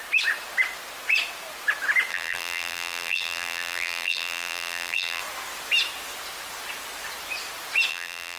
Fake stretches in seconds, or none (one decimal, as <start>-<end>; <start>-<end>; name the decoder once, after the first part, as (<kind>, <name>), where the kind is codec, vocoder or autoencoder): 2.1-5.2 (vocoder, BigVGAN v2); 7.9-8.4